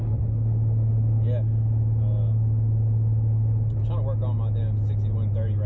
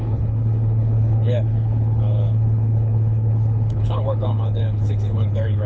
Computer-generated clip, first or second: second